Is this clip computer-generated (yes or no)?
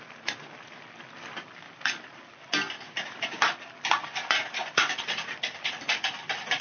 no